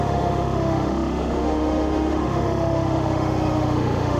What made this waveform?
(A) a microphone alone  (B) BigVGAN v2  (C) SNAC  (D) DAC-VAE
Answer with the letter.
D